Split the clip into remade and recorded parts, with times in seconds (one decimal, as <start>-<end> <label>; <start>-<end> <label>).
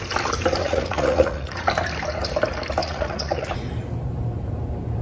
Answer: 0.0-0.6 recorded; 0.6-1.7 remade; 1.7-2.8 recorded; 2.8-3.5 remade; 3.5-5.0 recorded